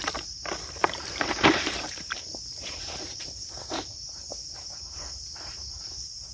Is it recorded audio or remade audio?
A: remade